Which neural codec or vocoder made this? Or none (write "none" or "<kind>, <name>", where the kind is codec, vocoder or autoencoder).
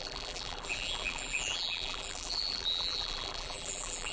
vocoder, BigVGAN v2